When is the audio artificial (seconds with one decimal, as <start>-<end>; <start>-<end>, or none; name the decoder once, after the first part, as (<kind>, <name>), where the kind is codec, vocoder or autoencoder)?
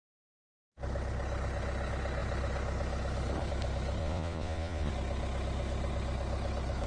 4.0-4.9 (vocoder, Vocos)